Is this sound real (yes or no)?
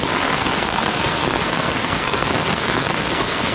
no